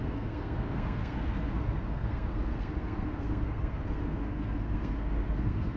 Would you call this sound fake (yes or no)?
yes